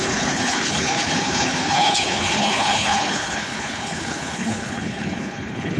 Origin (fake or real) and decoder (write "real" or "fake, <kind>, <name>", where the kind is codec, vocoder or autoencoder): fake, codec, HILCodec